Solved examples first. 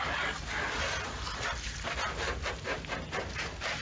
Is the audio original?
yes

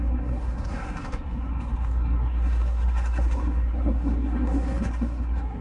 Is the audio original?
no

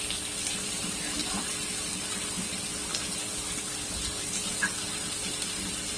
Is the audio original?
yes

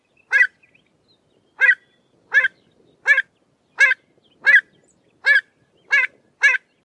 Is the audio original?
yes